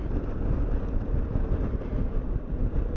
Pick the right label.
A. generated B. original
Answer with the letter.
B